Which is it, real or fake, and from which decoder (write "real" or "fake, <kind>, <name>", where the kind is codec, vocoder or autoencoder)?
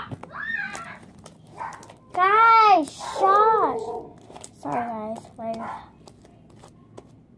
real